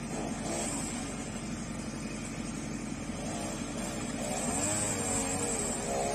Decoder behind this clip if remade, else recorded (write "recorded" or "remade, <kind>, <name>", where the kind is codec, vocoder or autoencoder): recorded